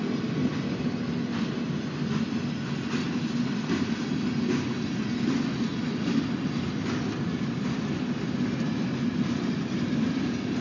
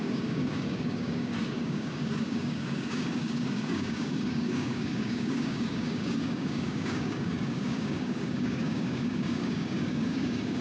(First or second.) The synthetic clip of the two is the second